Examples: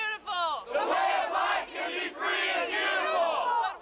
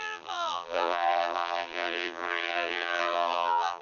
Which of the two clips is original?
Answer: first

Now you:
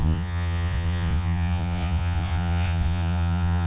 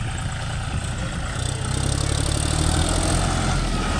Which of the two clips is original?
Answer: second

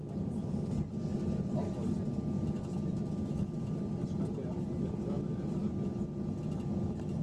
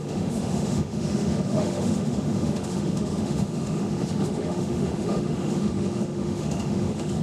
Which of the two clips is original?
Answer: first